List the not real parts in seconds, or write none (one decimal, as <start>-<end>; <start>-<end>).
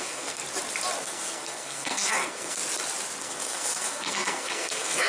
0.0-0.4; 1.0-2.6; 3.2-5.1